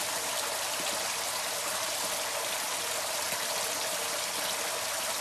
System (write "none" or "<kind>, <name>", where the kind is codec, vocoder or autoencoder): none